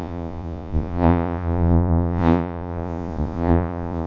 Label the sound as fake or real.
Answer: fake